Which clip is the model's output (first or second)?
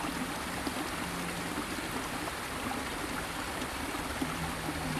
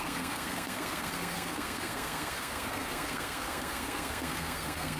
second